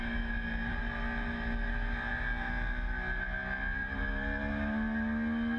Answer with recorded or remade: recorded